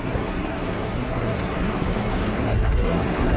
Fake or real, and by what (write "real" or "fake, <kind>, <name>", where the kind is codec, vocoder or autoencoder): fake, codec, SNAC